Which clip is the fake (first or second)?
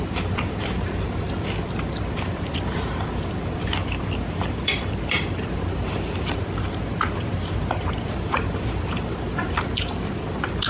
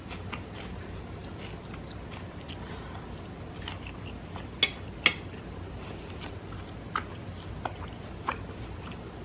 first